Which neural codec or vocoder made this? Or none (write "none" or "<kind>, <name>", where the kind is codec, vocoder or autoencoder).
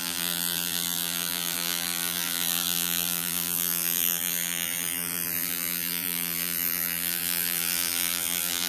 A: vocoder, BigVGAN v2